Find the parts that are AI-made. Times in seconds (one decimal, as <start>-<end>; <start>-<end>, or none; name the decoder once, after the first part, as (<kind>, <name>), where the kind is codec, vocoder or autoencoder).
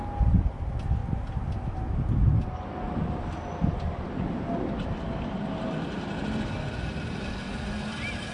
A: none